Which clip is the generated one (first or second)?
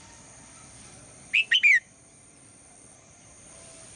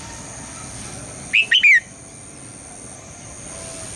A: first